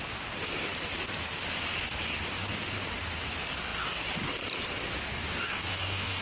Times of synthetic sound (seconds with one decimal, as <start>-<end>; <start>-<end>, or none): 5.1-6.2